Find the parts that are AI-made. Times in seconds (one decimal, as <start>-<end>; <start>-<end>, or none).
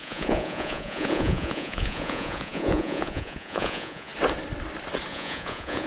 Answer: 0.0-4.1; 5.1-5.9